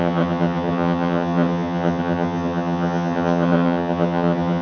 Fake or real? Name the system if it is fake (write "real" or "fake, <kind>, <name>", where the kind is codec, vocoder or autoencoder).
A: fake, vocoder, HiFi-GAN